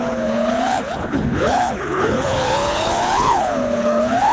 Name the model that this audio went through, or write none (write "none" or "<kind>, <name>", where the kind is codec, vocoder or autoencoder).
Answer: codec, HILCodec